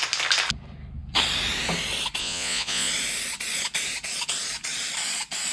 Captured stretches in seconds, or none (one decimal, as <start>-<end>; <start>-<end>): 0.0-2.2; 2.9-5.5